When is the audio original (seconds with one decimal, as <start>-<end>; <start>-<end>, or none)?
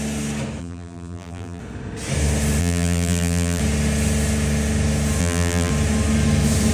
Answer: 0.0-0.6; 1.6-2.6; 3.6-5.2; 5.7-6.7